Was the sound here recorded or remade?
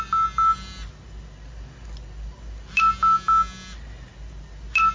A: recorded